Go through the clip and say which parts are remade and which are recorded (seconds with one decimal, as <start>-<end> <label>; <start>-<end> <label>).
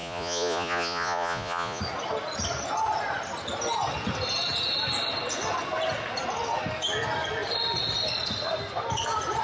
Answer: 0.0-1.8 remade; 1.8-9.4 recorded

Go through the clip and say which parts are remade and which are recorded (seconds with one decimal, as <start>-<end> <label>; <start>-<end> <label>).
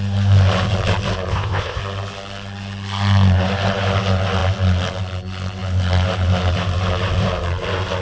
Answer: 0.0-1.3 recorded; 1.3-1.8 remade; 1.8-8.0 recorded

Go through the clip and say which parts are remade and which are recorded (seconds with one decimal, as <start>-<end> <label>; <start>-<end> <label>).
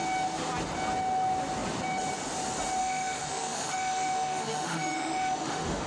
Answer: 0.0-2.8 recorded; 2.8-5.9 remade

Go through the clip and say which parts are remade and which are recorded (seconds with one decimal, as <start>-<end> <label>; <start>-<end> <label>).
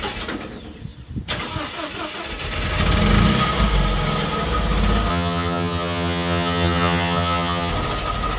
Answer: 0.0-5.1 recorded; 5.1-7.7 remade; 7.7-8.4 recorded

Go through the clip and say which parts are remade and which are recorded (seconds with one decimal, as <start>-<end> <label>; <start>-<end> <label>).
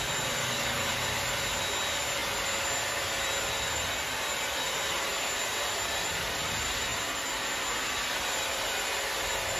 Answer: 0.0-0.4 recorded; 0.4-1.0 remade; 1.0-9.6 recorded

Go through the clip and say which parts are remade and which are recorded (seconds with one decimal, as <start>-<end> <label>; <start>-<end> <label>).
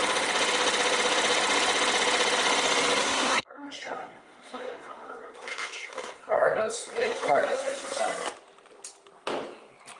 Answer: 0.0-3.0 recorded; 3.0-8.0 remade; 8.0-10.0 recorded